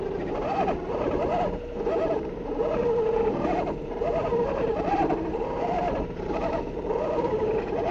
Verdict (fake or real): fake